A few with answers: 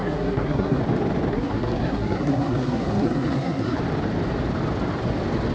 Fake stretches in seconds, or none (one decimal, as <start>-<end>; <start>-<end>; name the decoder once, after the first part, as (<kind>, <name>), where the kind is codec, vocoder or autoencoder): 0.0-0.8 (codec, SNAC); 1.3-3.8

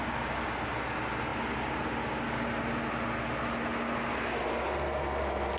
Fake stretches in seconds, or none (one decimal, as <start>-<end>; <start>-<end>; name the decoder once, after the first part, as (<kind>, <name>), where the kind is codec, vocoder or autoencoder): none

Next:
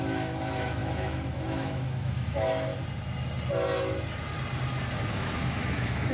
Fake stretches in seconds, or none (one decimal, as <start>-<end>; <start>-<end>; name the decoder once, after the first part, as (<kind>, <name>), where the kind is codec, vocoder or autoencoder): 0.0-2.7 (autoencoder, DAC-VAE); 5.1-6.1

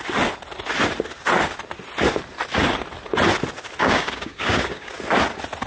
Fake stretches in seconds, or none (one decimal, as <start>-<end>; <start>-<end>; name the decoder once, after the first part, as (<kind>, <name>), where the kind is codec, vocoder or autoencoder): 3.8-4.9 (codec, DAC)

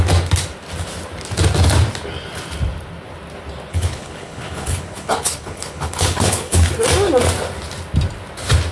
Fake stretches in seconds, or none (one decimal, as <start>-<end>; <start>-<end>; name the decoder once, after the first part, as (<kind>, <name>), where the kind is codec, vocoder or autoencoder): 3.7-6.7 (codec, HILCodec)